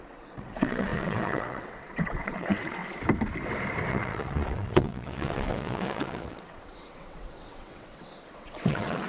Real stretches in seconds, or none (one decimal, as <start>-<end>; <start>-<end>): 2.8-3.9

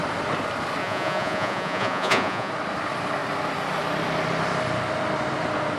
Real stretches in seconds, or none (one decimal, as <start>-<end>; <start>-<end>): 0.0-0.8; 2.5-5.8

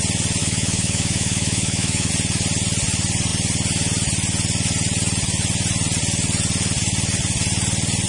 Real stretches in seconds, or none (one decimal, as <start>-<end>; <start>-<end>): 0.0-0.4; 2.1-8.1

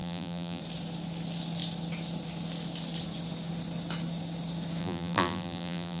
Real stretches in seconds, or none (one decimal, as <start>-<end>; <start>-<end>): 0.6-4.8

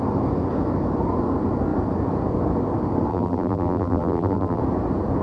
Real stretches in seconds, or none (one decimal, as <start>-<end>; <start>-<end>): 0.0-3.1; 4.6-5.2

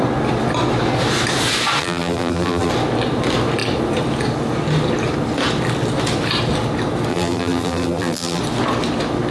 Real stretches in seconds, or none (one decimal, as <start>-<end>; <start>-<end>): 0.0-1.8; 2.7-7.1; 8.4-9.3

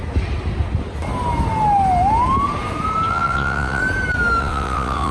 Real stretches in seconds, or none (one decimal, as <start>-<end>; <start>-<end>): 0.0-3.1; 3.8-4.4